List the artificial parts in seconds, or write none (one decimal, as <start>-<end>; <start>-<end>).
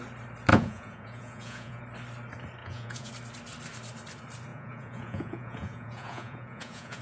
0.5-1.8; 2.6-3.1; 4.5-7.0